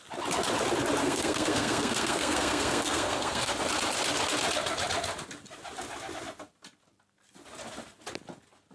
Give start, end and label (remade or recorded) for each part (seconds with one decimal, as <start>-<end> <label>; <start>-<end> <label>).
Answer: 0.0-1.0 recorded; 1.0-3.5 remade; 3.5-8.7 recorded